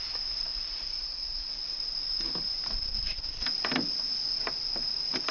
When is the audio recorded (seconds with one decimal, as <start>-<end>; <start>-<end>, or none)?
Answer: 0.0-0.5; 1.7-5.3